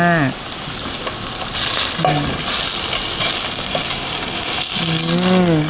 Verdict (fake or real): real